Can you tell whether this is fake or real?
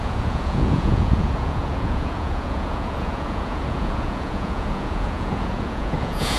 fake